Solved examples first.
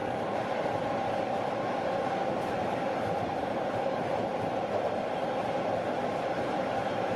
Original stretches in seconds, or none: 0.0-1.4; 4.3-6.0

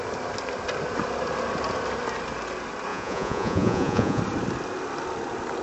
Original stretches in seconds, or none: 0.0-2.9; 4.2-5.6

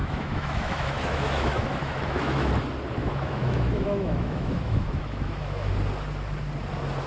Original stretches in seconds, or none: 2.5-3.0; 5.7-7.1

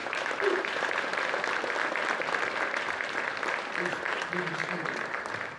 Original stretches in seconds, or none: 1.1-3.9

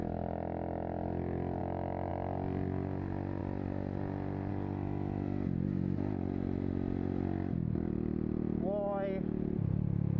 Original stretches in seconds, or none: 0.0-10.2

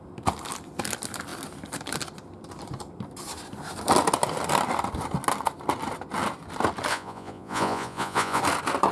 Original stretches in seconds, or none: 0.0-6.9; 8.4-8.9

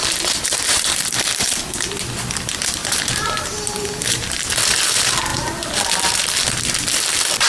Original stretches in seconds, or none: 1.7-2.8; 4.6-7.5